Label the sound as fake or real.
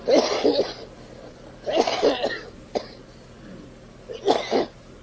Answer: real